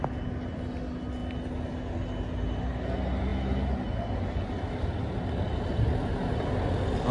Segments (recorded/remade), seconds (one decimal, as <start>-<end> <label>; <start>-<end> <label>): 0.0-7.1 recorded